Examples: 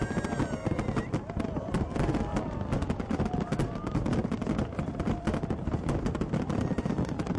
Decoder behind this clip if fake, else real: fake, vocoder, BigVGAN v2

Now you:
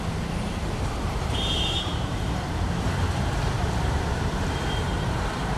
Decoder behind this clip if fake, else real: fake, vocoder, BigVGAN v2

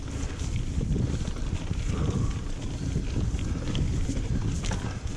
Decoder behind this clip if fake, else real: real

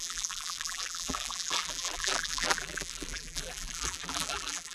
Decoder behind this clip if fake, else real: fake, vocoder, BigVGAN v2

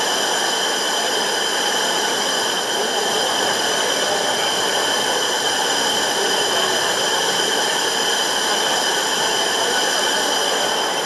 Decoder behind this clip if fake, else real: real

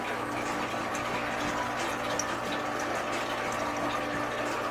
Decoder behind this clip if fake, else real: real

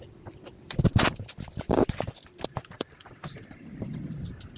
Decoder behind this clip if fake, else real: fake, vocoder, BigVGAN v2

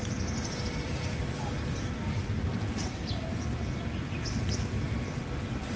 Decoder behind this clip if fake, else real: fake, vocoder, BigVGAN v2